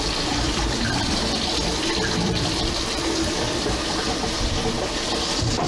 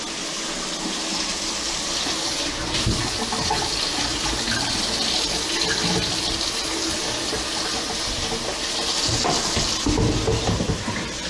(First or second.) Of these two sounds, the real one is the second